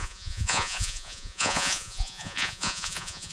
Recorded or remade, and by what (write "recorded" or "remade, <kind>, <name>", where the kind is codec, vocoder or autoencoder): remade, vocoder, Vocos